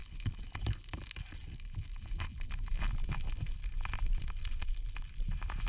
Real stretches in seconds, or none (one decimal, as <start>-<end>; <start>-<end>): 0.0-5.7